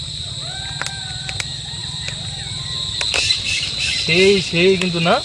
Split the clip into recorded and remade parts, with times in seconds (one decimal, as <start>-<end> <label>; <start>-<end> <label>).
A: 0.0-5.2 recorded